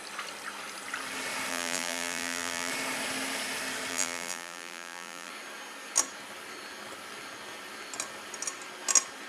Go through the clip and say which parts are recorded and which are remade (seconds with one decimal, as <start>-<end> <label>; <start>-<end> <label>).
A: 0.0-1.5 recorded; 1.5-2.7 remade; 2.7-3.9 recorded; 3.9-5.3 remade; 5.3-9.3 recorded